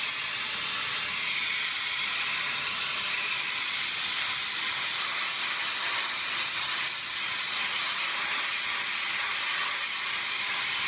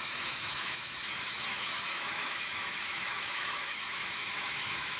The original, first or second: first